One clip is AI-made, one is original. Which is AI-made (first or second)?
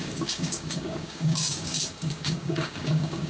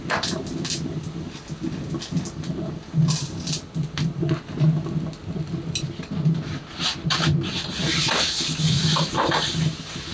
first